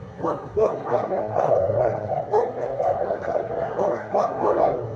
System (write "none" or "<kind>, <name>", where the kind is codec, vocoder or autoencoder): codec, SNAC